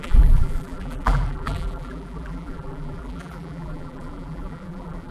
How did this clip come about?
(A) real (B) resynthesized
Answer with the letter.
B